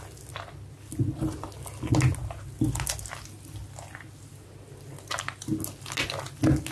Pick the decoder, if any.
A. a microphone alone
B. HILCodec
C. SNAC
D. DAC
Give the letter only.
A